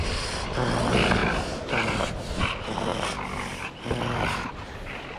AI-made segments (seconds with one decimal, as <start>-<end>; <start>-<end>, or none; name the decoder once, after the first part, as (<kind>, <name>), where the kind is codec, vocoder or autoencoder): none